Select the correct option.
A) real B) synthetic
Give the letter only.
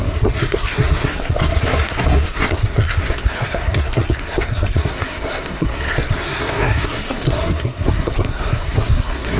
B